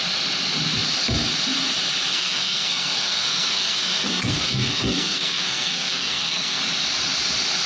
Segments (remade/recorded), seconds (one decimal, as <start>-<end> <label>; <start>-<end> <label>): 0.0-2.1 recorded; 2.1-6.6 remade; 6.6-7.7 recorded